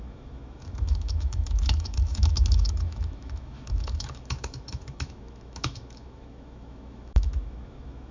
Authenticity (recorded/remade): remade